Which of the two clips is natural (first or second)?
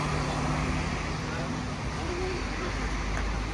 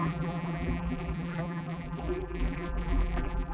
first